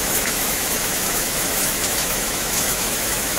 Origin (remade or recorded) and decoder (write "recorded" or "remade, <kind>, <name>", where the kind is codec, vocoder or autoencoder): remade, autoencoder, DAC-VAE